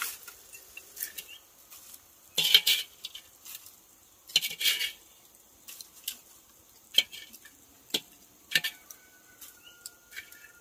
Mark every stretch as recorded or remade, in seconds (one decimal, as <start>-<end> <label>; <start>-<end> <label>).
0.0-8.0 recorded; 8.0-9.0 remade; 9.0-10.6 recorded

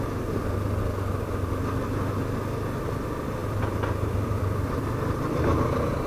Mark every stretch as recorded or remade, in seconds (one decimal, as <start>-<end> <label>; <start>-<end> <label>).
0.0-3.4 recorded; 3.4-6.1 remade

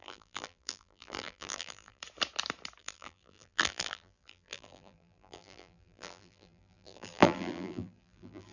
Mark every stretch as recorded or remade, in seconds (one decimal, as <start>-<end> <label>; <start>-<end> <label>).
0.0-2.0 remade; 2.0-2.8 recorded; 2.8-8.5 remade